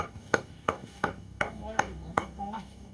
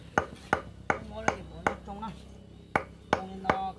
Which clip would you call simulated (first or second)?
first